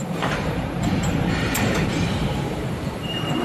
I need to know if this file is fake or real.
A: fake